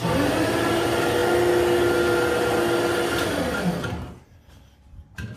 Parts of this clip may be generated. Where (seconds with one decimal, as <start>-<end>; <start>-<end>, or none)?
none